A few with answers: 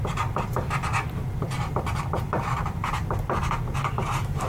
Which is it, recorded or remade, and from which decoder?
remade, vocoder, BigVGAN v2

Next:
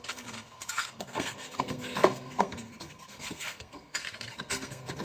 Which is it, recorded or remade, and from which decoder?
remade, codec, SNAC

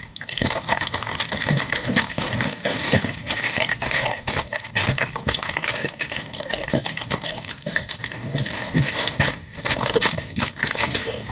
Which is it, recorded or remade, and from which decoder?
remade, codec, DAC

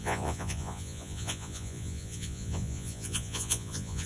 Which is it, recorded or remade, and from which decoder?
remade, vocoder, Vocos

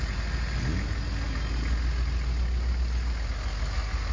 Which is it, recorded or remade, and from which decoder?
recorded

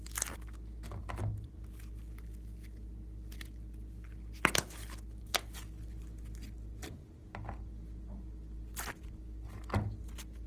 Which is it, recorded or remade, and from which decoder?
recorded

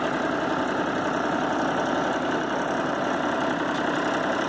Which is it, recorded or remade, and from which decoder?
recorded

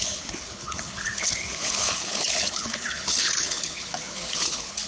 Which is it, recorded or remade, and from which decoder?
remade, codec, HILCodec